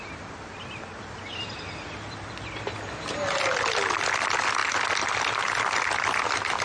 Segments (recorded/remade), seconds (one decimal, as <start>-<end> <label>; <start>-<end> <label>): 0.0-1.3 recorded; 1.3-3.8 remade; 3.8-6.6 recorded